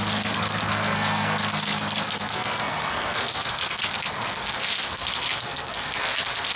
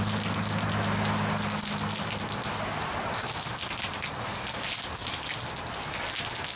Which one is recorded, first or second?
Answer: second